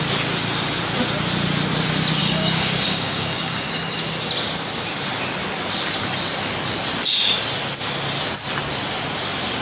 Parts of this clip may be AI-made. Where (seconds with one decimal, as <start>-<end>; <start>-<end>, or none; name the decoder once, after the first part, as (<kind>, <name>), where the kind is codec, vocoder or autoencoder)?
2.2-3.7 (codec, DAC)

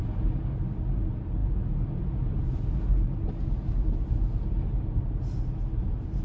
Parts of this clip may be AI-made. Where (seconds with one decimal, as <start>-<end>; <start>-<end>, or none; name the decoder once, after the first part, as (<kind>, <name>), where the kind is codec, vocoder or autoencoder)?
none

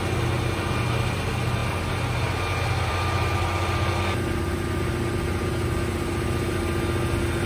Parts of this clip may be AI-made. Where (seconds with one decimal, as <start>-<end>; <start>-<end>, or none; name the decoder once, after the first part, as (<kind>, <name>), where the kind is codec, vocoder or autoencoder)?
none

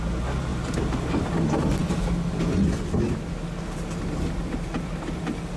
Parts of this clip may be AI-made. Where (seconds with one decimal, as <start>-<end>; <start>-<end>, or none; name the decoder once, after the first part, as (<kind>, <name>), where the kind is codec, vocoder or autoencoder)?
0.5-1.1 (vocoder, BigVGAN v2)

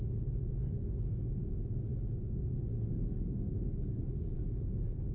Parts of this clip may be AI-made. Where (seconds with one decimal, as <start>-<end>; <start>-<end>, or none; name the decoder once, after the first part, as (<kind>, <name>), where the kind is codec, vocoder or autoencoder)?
none